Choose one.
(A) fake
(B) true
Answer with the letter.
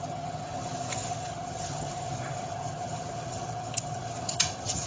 A